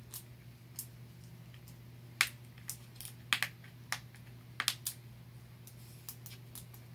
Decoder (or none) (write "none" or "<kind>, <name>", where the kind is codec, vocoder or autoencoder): none